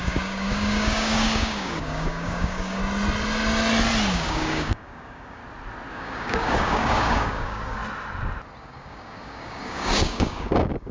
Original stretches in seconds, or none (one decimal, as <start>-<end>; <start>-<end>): 2.8-4.1; 5.4-5.9; 7.8-8.6